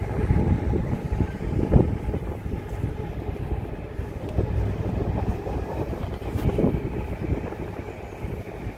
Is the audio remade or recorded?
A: recorded